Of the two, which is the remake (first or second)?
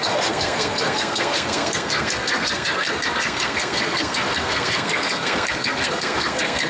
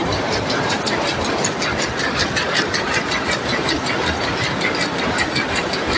first